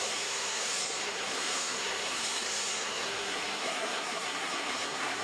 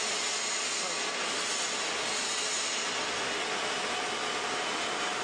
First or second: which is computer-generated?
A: first